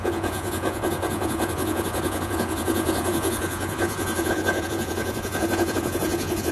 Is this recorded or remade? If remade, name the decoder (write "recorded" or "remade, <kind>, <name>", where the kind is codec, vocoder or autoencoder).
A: remade, vocoder, Vocos